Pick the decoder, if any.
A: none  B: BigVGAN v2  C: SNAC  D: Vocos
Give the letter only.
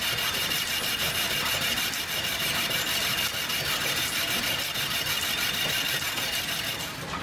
B